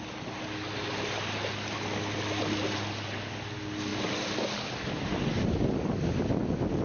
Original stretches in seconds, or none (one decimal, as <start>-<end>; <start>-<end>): 0.0-6.8